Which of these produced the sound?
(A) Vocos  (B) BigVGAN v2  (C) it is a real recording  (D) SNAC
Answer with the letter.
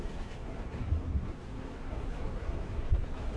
D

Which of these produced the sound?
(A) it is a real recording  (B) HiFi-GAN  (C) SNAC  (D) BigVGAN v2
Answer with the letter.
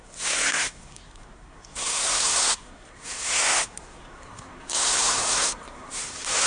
C